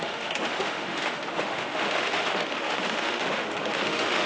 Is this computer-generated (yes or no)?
yes